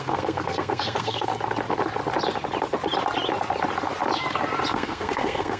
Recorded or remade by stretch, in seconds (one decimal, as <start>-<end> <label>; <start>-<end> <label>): 0.0-1.3 remade; 1.3-4.7 recorded; 4.7-5.6 remade